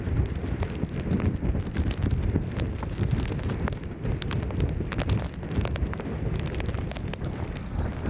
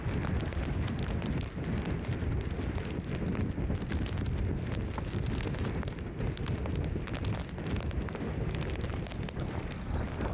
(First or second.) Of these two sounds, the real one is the second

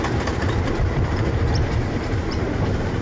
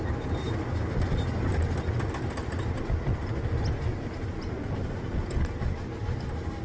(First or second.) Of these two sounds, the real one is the second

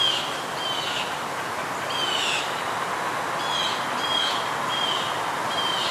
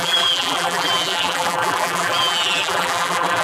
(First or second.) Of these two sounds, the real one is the first